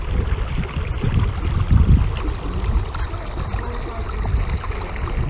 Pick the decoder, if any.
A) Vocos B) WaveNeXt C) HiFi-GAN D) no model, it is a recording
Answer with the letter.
D